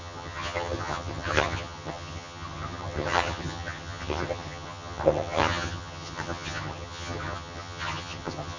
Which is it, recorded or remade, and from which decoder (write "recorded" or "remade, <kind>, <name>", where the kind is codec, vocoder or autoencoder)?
remade, vocoder, HiFi-GAN